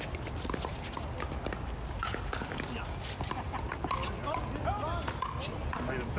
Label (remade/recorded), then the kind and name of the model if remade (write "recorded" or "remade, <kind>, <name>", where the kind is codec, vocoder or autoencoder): recorded